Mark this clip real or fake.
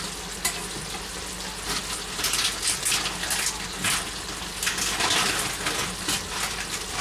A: real